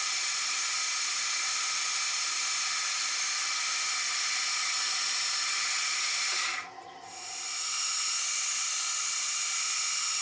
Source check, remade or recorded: recorded